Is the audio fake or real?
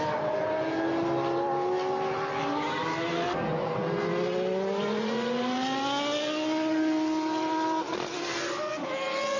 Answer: real